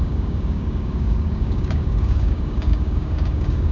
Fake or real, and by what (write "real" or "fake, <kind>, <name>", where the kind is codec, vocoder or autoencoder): fake, codec, DAC